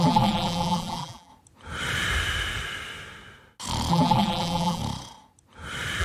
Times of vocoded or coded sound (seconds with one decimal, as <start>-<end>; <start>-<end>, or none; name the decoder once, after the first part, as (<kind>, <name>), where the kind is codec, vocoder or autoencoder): 0.0-1.3 (vocoder, BigVGAN v2); 3.9-4.8